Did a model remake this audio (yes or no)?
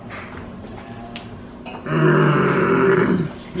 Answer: yes